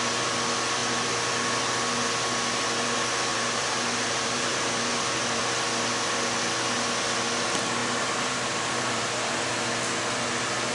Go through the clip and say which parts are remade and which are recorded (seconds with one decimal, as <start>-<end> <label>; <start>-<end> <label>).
0.0-3.3 recorded; 3.3-5.4 remade; 5.4-7.8 recorded; 7.8-9.3 remade; 9.3-10.7 recorded